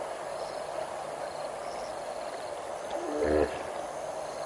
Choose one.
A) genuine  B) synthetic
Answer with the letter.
A